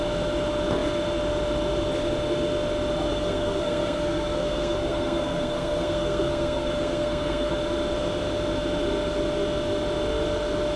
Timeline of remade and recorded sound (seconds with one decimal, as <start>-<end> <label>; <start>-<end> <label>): 0.0-3.1 recorded; 3.1-7.5 remade; 7.5-10.8 recorded